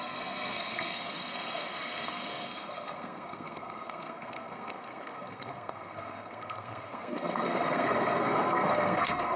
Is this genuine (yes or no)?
no